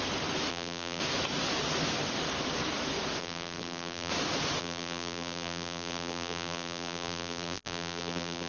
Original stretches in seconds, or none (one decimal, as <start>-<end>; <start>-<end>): 0.0-0.5; 1.0-3.2; 4.1-4.6